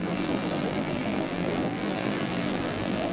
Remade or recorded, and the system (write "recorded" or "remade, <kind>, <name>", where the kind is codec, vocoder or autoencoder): remade, vocoder, BigVGAN v2